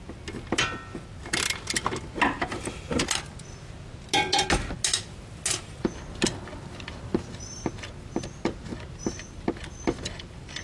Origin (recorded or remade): recorded